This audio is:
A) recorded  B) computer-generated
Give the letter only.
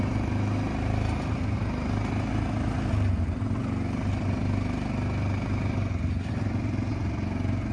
A